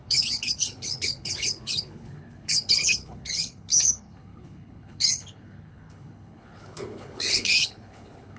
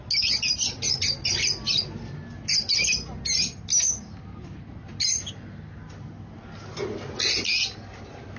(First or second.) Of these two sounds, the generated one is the first